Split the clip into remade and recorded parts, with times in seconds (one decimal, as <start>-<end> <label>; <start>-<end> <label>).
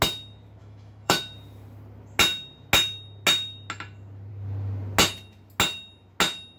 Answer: 0.0-0.6 recorded; 0.6-1.2 remade; 1.2-6.6 recorded